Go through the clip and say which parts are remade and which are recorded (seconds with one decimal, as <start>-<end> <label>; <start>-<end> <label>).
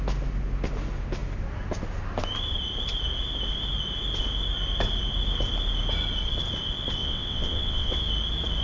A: 0.0-7.0 recorded; 7.0-8.0 remade; 8.0-8.6 recorded